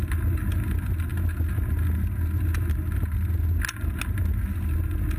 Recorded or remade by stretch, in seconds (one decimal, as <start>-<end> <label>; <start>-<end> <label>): 0.0-5.2 recorded